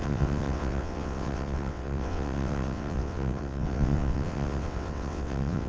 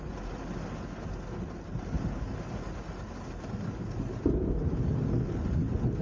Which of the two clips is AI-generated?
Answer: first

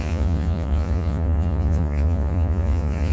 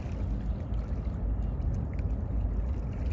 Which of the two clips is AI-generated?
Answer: first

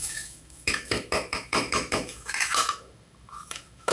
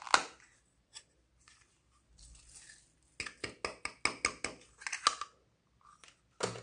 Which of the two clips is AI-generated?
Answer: first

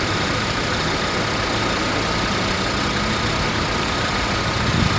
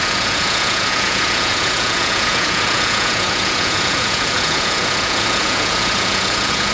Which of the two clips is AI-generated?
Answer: second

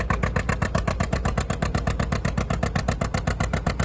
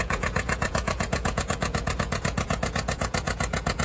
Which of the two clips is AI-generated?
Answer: second